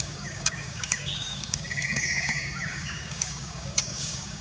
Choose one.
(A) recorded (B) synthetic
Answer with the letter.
B